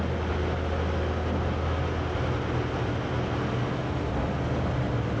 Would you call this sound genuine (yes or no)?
yes